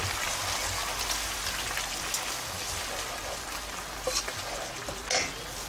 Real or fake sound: real